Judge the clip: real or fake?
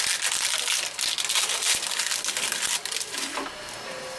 real